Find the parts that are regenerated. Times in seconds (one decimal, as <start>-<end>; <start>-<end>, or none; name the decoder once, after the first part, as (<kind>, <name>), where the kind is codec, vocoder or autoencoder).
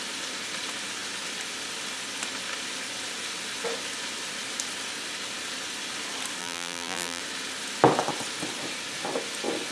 6.4-7.2 (vocoder, BigVGAN v2)